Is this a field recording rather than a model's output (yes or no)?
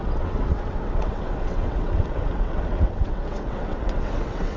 no